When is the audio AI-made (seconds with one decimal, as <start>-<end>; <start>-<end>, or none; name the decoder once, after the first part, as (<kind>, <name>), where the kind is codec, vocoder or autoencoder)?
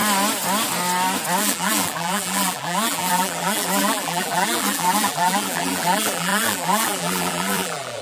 1.4-8.0 (vocoder, BigVGAN v2)